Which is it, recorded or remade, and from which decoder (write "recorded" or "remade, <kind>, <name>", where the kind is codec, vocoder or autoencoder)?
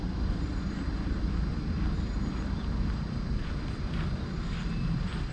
recorded